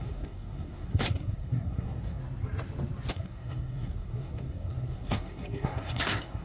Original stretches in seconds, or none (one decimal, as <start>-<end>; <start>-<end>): 2.2-3.1